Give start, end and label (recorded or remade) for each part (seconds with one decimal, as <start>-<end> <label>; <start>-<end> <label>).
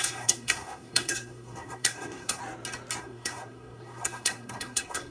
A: 0.0-2.4 remade; 2.4-3.0 recorded; 3.0-5.1 remade